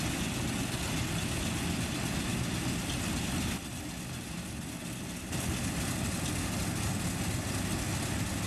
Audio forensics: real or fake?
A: real